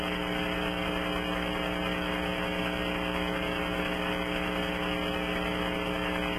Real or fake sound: real